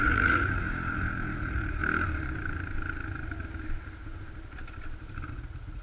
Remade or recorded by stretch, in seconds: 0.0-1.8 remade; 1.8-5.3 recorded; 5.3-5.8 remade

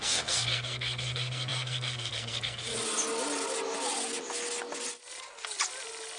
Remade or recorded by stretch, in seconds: 0.0-2.7 remade; 2.7-6.2 recorded